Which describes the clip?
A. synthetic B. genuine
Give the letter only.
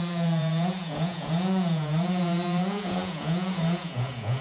A